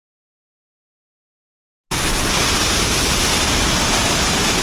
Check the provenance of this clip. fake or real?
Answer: real